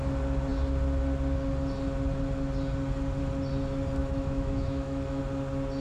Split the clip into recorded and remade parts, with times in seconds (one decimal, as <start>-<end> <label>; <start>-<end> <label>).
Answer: 0.0-4.0 recorded; 4.0-5.2 remade; 5.2-5.8 recorded